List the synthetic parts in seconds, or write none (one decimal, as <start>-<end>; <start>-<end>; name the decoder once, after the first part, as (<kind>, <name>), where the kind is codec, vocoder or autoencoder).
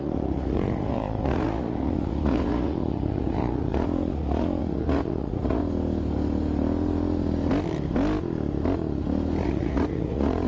0.0-5.6 (vocoder, Vocos); 9.4-10.5